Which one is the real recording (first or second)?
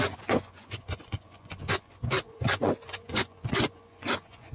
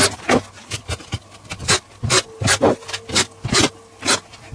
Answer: second